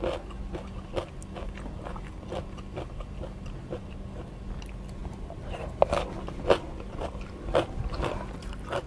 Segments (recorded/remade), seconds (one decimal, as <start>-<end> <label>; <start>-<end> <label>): 0.0-5.0 recorded; 5.0-5.5 remade; 5.5-8.9 recorded